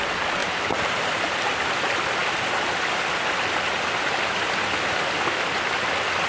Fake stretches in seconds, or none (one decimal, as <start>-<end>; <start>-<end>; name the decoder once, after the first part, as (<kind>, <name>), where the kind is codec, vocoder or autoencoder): 0.4-1.7 (vocoder, BigVGAN v2)